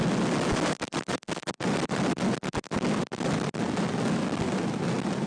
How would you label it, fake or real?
real